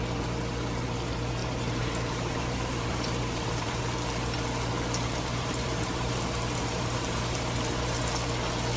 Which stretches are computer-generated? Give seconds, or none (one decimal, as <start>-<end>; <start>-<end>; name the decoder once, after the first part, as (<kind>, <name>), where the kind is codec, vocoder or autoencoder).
1.4-3.8 (vocoder, BigVGAN v2); 5.1-8.0